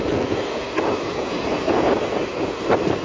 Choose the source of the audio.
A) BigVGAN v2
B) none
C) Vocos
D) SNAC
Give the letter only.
B